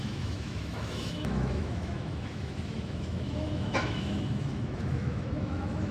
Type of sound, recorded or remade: remade